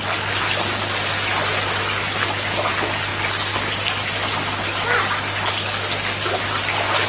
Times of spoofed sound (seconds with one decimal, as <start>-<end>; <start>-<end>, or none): none